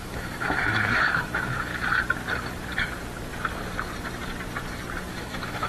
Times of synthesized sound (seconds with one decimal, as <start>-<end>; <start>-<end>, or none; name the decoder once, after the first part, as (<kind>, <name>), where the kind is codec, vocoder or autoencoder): 0.0-1.7 (autoencoder, DAC-VAE); 5.1-5.7

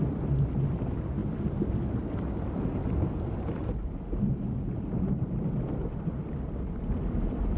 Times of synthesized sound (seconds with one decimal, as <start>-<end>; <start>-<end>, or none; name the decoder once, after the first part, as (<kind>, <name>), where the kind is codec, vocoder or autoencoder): none